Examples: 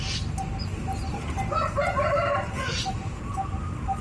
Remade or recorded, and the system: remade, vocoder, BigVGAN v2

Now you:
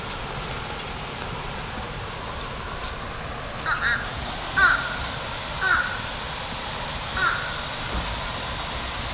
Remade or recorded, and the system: recorded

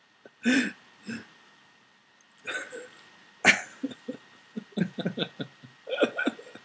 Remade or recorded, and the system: recorded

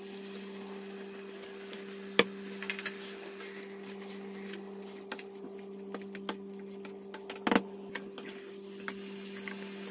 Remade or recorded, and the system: recorded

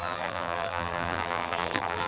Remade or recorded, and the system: remade, vocoder, BigVGAN v2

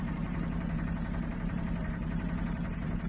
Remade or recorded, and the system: remade, vocoder, BigVGAN v2